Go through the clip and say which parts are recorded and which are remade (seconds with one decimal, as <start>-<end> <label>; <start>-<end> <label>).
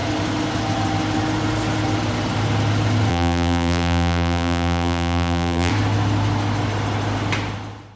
0.0-3.1 recorded; 3.1-5.7 remade; 5.7-8.0 recorded